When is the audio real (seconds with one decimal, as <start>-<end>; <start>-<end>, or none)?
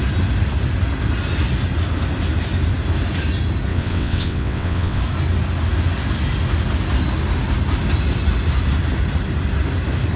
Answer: 0.0-3.7; 5.0-10.2